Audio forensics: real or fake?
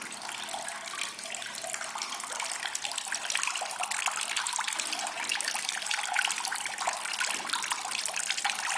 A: real